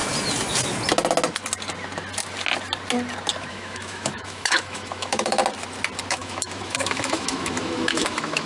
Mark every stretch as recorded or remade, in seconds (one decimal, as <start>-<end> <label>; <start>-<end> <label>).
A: 0.0-3.5 recorded; 3.5-5.4 remade; 5.4-6.1 recorded; 6.1-8.5 remade